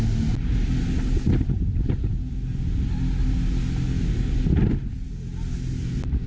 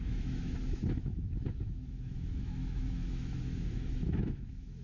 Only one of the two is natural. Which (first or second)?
first